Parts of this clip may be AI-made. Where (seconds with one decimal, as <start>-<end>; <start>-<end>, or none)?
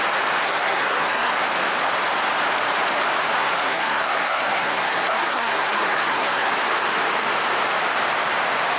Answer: 0.4-1.3; 3.4-6.5